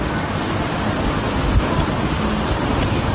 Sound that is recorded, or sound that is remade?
recorded